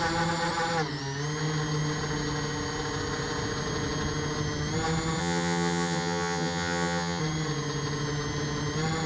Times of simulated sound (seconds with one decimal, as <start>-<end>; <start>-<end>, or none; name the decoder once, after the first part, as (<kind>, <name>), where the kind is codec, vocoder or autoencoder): 5.2-7.2 (vocoder, HiFi-GAN)